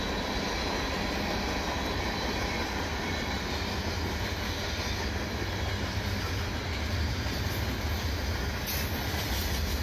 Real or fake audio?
real